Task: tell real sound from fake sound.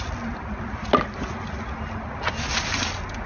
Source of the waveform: real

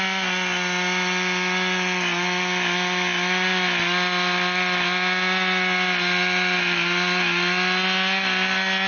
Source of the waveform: real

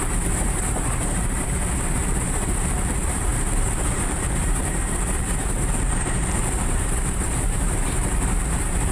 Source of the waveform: fake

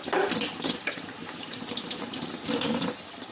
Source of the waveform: fake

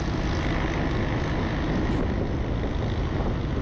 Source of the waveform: real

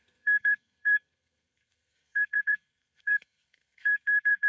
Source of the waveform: fake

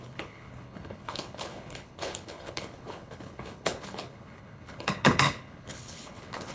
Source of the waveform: fake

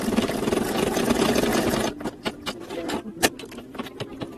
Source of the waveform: fake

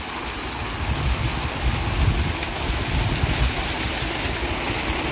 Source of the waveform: real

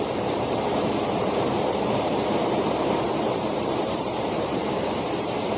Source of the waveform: fake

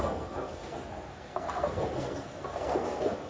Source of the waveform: fake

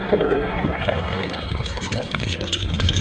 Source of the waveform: fake